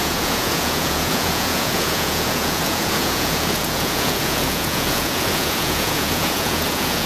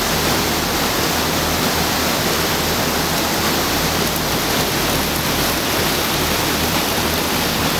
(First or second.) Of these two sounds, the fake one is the first